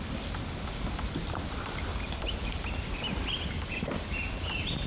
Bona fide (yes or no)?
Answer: yes